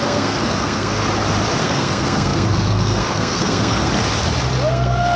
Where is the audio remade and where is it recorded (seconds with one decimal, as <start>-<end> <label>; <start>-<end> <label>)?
0.0-1.0 remade; 1.0-1.6 recorded; 1.6-3.9 remade; 3.9-4.7 recorded; 4.7-5.2 remade